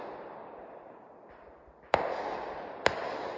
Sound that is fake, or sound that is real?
real